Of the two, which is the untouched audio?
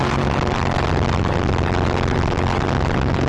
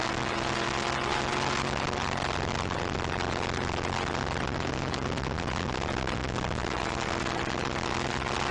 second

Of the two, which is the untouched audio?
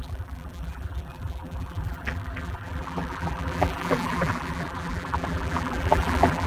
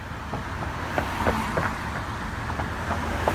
second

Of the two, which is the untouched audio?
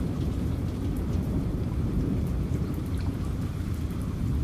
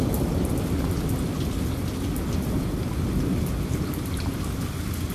second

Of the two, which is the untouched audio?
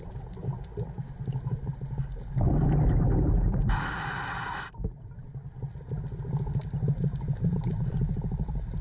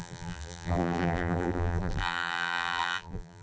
first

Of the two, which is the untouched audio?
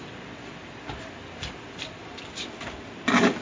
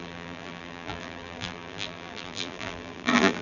first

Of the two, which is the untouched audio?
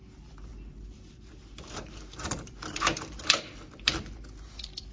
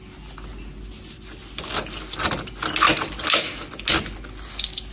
second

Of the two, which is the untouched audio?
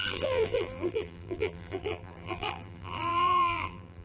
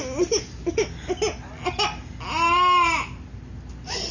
second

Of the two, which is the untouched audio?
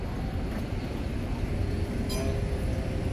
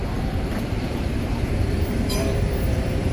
first